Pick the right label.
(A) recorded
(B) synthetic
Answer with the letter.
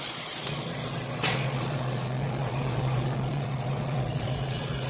B